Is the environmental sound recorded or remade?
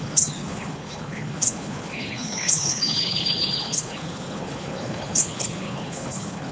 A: remade